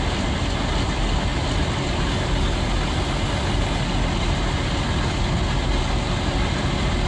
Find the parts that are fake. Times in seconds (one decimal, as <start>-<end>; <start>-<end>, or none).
none